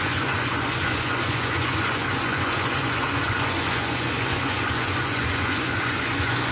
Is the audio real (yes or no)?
no